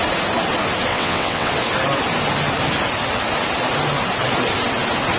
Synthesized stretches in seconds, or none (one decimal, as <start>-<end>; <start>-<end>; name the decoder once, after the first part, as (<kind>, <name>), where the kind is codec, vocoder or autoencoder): 0.9-1.5 (vocoder, WaveNeXt)